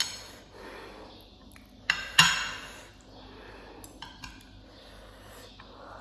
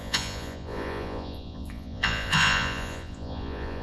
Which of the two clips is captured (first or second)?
first